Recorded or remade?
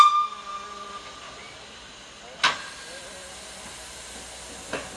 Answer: recorded